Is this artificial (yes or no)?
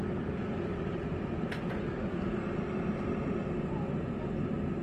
no